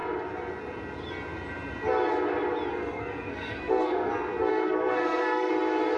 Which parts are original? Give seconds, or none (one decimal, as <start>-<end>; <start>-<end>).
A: 0.0-2.7; 4.1-4.5; 5.5-6.0